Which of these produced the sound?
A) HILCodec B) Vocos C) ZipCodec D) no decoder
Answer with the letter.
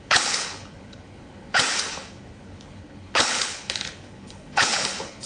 A